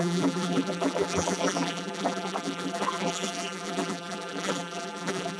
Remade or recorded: remade